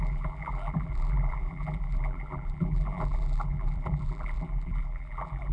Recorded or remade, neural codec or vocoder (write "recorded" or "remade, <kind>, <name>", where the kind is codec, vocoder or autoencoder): remade, vocoder, BigVGAN v2